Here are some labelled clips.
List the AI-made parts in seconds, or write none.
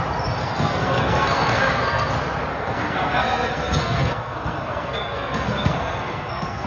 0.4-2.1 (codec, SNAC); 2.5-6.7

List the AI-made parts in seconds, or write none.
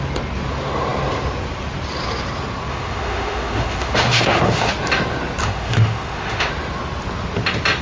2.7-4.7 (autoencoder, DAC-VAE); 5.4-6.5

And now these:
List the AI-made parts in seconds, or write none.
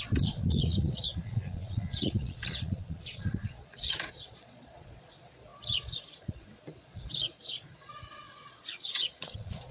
0.0-9.7 (vocoder, Vocos)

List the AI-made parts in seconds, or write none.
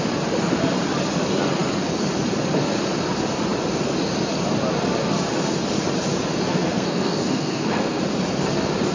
6.5-8.0 (codec, SNAC)